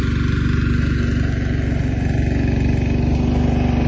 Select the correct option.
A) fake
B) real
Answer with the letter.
B